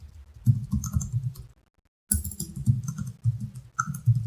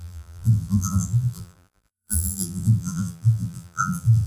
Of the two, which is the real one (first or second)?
first